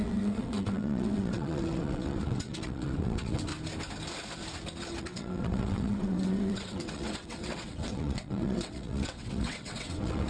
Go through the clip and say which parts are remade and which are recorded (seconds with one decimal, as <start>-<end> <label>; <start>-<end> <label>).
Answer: 0.0-3.5 remade; 3.5-5.0 recorded; 5.0-10.3 remade